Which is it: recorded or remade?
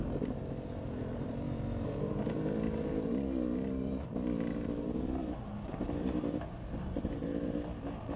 remade